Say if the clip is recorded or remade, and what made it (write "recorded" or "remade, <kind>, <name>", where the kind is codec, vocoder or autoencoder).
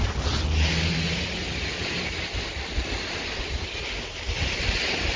recorded